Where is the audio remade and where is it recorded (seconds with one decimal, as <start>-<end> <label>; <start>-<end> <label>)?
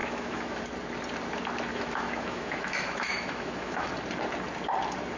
0.0-0.6 remade; 0.6-1.7 recorded; 1.7-3.9 remade; 3.9-5.2 recorded